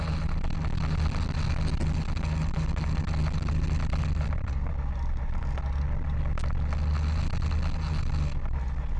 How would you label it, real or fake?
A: real